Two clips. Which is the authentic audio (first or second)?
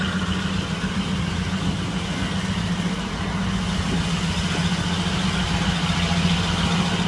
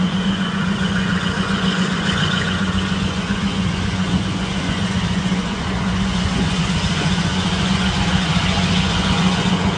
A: first